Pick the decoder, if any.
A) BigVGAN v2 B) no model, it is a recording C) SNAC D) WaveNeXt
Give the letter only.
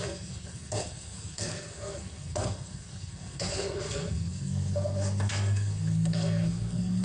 C